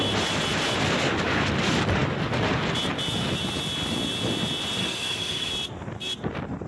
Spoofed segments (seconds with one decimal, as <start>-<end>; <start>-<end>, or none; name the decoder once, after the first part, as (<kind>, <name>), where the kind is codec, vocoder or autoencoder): 4.8-5.5 (codec, SNAC)